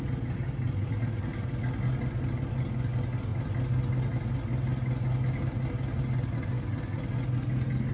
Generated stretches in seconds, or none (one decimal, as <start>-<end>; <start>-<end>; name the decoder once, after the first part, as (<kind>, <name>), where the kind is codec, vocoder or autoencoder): none